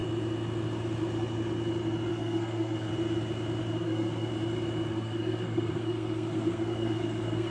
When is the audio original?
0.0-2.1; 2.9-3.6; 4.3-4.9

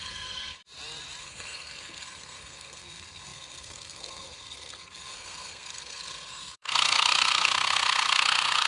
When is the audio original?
0.6-1.2

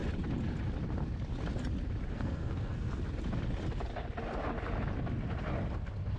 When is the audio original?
0.0-2.1; 2.9-6.2